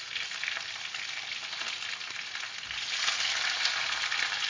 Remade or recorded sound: recorded